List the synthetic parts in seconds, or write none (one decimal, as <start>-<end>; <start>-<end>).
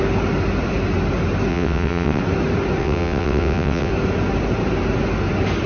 1.5-2.2; 2.8-3.9